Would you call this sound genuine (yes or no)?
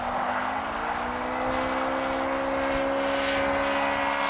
yes